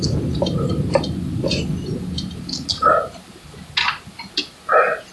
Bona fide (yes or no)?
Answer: yes